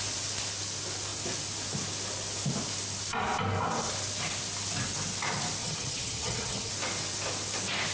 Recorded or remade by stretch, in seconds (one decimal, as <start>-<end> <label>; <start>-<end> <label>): 0.0-5.6 recorded; 5.6-6.7 remade; 6.7-7.9 recorded